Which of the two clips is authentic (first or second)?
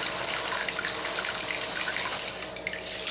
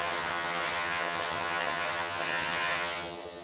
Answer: first